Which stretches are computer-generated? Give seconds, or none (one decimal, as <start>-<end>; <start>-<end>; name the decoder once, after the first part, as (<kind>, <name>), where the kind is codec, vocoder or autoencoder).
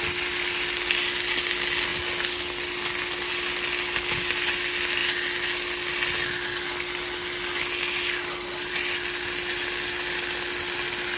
none